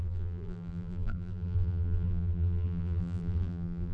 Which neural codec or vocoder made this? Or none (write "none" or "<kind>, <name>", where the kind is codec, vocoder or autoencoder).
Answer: vocoder, BigVGAN v2